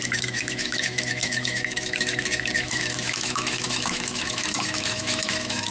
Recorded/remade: remade